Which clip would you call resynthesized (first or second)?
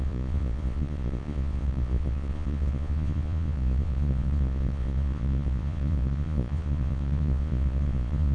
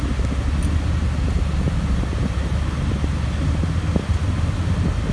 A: first